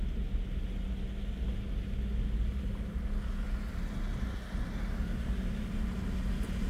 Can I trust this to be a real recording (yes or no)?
yes